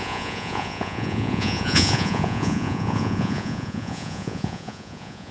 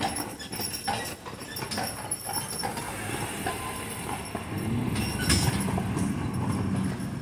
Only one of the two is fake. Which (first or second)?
first